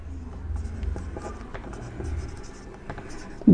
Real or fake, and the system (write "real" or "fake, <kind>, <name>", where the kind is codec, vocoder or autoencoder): real